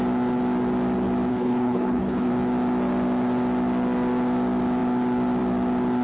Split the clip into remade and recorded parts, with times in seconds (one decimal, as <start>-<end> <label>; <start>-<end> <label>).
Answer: 0.0-1.3 recorded; 1.3-2.3 remade; 2.3-6.0 recorded